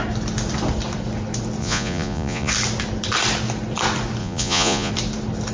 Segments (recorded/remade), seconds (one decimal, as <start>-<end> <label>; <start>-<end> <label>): 0.0-1.6 recorded; 1.6-2.5 remade; 2.5-4.2 recorded; 4.2-4.9 remade; 4.9-5.5 recorded

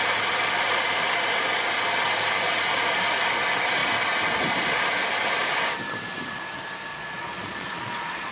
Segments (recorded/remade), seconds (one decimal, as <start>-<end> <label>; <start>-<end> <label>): 0.0-6.9 recorded; 6.9-8.3 remade

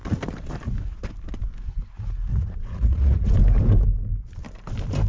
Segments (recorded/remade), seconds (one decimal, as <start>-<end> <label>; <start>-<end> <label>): 0.0-2.3 recorded; 2.3-3.3 remade; 3.3-5.1 recorded

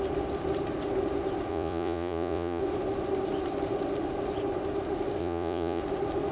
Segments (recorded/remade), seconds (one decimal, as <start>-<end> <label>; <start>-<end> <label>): 0.0-1.5 recorded; 1.5-2.6 remade; 2.6-5.2 recorded; 5.2-5.8 remade; 5.8-6.3 recorded

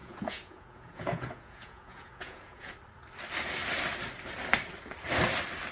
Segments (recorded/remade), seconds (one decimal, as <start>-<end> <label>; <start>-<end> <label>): 0.0-2.7 remade; 2.7-5.7 recorded

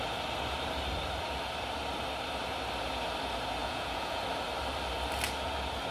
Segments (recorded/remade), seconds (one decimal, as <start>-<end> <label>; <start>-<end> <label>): 0.0-3.6 recorded; 3.6-4.2 remade; 4.2-5.9 recorded